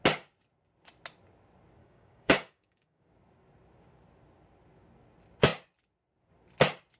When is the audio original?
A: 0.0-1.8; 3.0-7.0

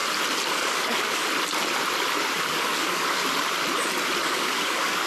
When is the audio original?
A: 0.0-0.5; 1.2-2.4; 3.2-4.3

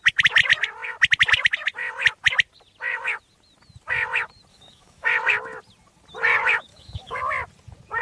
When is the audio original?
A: 0.0-4.5; 5.1-6.7; 7.2-8.0

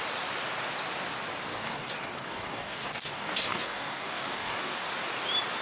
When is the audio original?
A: 0.0-1.5; 4.9-5.6